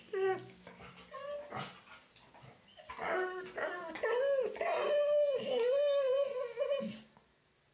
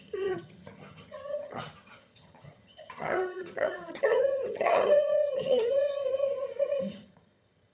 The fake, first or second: second